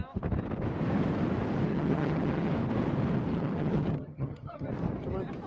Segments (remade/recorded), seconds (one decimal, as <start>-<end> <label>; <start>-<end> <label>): 0.0-1.7 recorded; 1.7-2.5 remade; 2.5-3.3 recorded; 3.3-4.7 remade; 4.7-5.5 recorded